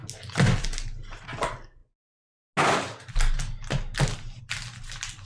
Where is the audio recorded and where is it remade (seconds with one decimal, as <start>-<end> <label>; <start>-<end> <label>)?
0.0-5.3 recorded